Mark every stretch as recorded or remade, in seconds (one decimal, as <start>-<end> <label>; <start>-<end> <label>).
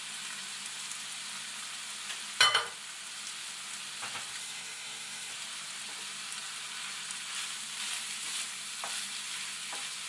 0.0-4.4 recorded; 4.4-5.3 remade; 5.3-10.1 recorded